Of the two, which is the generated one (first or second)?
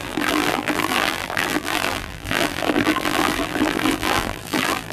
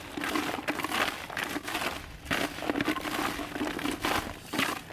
first